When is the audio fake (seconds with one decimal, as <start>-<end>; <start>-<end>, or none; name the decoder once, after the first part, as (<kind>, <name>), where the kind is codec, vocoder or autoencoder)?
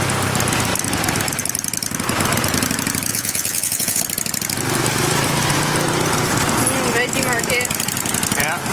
3.1-4.0 (vocoder, Vocos)